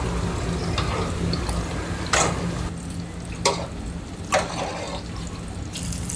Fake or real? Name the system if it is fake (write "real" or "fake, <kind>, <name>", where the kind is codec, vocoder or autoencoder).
real